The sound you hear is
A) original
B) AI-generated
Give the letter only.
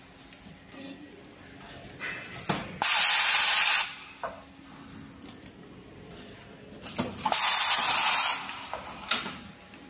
A